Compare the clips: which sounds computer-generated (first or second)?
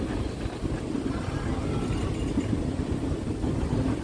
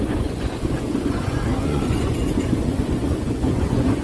second